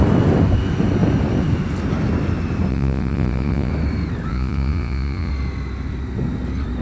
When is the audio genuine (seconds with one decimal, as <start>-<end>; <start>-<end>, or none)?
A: 0.0-2.7; 3.7-4.3; 5.3-6.8